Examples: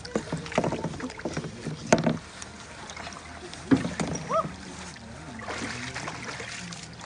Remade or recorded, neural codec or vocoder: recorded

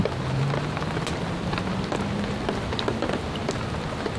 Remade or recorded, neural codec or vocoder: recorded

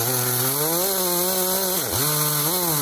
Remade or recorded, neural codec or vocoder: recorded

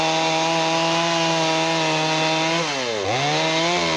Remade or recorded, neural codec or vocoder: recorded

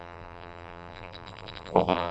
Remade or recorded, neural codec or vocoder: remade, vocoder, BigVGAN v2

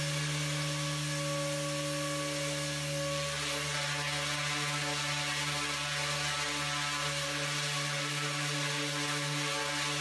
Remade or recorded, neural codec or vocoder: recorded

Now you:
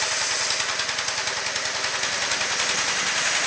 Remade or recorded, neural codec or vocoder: recorded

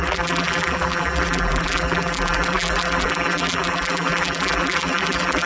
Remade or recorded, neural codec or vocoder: remade, vocoder, BigVGAN v2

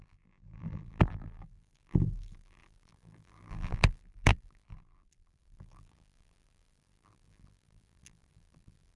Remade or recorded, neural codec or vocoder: remade, vocoder, BigVGAN v2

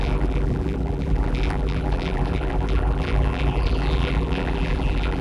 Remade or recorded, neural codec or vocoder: remade, vocoder, BigVGAN v2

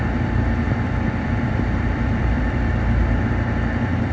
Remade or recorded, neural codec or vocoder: remade, vocoder, BigVGAN v2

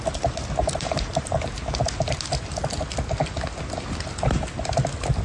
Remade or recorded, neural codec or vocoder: recorded